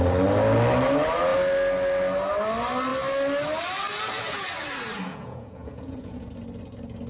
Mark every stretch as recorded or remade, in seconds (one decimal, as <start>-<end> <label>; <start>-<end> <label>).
0.0-5.1 recorded; 5.1-6.3 remade; 6.3-7.1 recorded

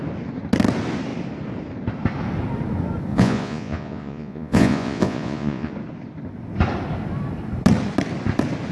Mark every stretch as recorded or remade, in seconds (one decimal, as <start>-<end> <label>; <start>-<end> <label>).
0.0-3.1 recorded; 3.1-5.7 remade; 5.7-8.7 recorded

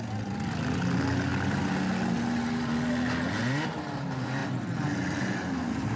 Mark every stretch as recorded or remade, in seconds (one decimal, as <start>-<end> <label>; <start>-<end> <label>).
0.0-6.0 recorded

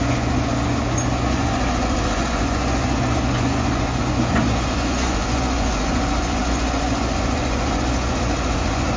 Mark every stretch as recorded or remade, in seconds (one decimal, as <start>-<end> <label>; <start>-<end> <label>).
0.0-9.0 remade